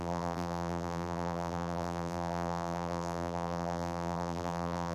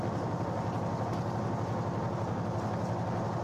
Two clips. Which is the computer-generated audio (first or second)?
first